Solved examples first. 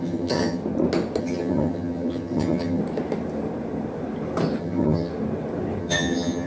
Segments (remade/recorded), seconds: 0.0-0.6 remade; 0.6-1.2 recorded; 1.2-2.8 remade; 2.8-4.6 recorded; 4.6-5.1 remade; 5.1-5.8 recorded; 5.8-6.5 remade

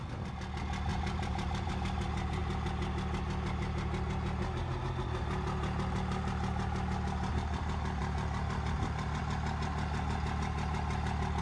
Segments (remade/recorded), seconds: 0.0-0.9 recorded; 0.9-1.7 remade; 1.7-11.4 recorded

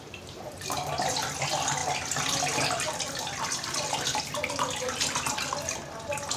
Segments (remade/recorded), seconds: 0.0-6.4 recorded

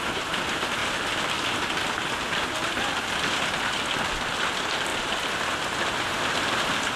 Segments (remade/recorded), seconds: 0.0-7.0 recorded

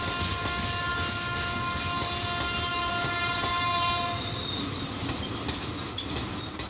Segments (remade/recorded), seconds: 0.0-2.7 recorded; 2.7-5.3 remade; 5.3-6.7 recorded

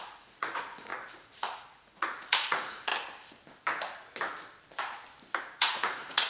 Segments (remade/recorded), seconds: 0.0-2.9 remade; 2.9-5.4 recorded; 5.4-6.3 remade